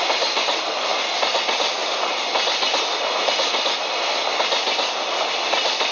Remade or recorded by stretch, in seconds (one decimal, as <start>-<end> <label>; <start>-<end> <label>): 0.0-0.9 recorded; 0.9-1.4 remade; 1.4-5.9 recorded